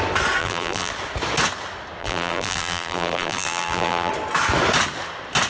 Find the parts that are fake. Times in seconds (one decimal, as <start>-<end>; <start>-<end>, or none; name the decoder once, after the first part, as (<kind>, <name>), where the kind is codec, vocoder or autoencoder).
0.4-0.9 (vocoder, BigVGAN v2); 2.0-4.1